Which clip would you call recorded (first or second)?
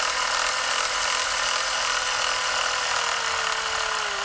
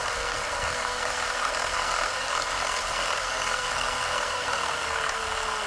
first